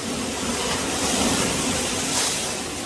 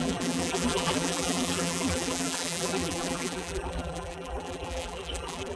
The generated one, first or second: second